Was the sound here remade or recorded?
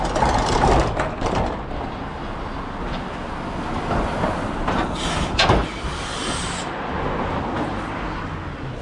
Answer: recorded